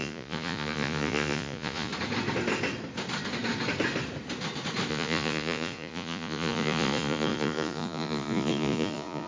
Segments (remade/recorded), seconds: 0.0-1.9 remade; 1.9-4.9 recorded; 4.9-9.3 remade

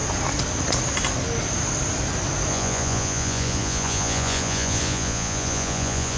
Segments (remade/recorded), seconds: 0.0-2.5 recorded; 2.5-6.2 remade

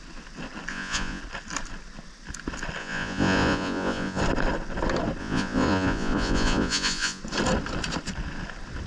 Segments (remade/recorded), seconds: 0.0-0.7 recorded; 0.7-1.2 remade; 1.2-2.8 recorded; 2.8-4.2 remade; 4.2-5.2 recorded; 5.2-7.2 remade; 7.2-8.9 recorded

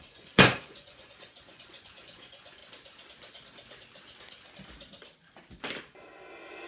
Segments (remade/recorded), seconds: 0.0-2.6 remade; 2.6-6.7 recorded

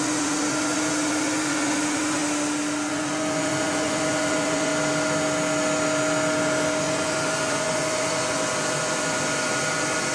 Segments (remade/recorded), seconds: 0.0-2.2 remade; 2.2-2.9 recorded; 2.9-4.7 remade; 4.7-6.8 recorded; 6.8-10.1 remade

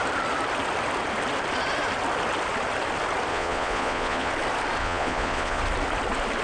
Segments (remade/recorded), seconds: 0.0-3.3 recorded; 3.3-4.3 remade; 4.3-4.8 recorded; 4.8-5.6 remade; 5.6-6.4 recorded

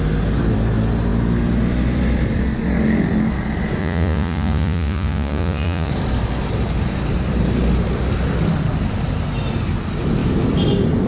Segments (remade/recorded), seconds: 0.0-3.8 recorded; 3.8-5.9 remade; 5.9-11.1 recorded

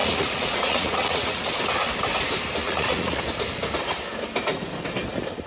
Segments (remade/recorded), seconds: 0.0-1.4 remade; 1.4-2.6 recorded; 2.6-3.2 remade; 3.2-5.5 recorded